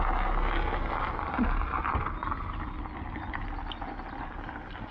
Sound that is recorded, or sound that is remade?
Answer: recorded